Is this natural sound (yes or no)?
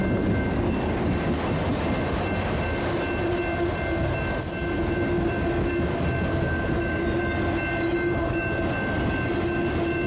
yes